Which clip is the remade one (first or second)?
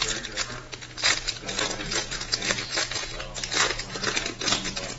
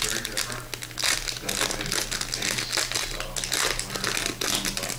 first